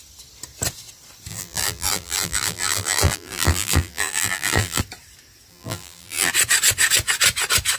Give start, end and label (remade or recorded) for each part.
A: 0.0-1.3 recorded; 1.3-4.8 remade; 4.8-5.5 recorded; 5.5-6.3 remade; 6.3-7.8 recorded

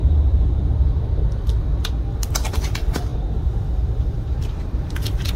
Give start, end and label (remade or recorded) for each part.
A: 0.0-0.5 remade; 0.5-3.1 recorded; 3.1-4.9 remade; 4.9-5.4 recorded

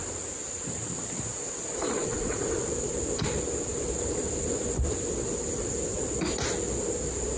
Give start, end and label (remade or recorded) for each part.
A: 0.0-2.0 recorded; 2.0-2.6 remade; 2.6-7.4 recorded